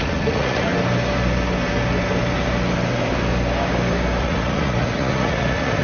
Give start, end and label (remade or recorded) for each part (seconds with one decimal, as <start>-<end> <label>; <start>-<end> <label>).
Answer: 0.0-0.7 remade; 0.7-4.2 recorded; 4.2-5.8 remade